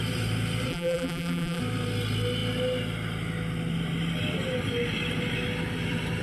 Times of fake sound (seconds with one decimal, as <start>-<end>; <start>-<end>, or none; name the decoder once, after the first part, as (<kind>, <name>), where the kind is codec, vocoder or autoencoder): 0.7-1.6 (vocoder, BigVGAN v2)